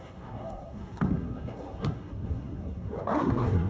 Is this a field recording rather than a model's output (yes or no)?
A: no